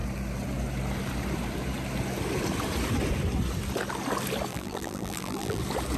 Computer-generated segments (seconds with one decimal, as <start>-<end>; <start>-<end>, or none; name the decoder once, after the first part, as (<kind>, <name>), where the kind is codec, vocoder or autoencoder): 4.5-5.6 (vocoder, BigVGAN v2)

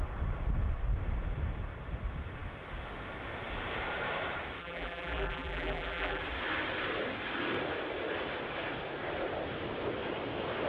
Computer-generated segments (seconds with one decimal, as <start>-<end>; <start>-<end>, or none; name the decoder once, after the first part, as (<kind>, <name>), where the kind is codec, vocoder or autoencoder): 4.6-6.2 (vocoder, BigVGAN v2)

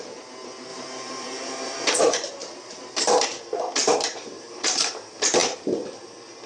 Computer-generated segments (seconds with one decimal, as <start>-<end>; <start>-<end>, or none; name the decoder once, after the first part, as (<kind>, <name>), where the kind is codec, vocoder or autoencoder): 0.7-2.0 (vocoder, BigVGAN v2); 2.4-3.0; 3.8-4.9

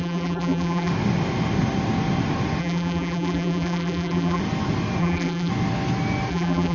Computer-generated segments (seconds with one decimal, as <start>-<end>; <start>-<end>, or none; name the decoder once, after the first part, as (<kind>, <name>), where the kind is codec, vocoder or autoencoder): 0.0-0.9 (vocoder, BigVGAN v2); 2.6-4.4; 5.0-5.5; 6.3-6.7

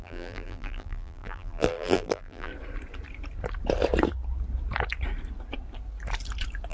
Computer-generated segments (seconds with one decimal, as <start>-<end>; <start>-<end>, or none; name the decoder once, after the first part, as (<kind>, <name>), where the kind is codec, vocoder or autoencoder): 0.0-2.5 (vocoder, BigVGAN v2)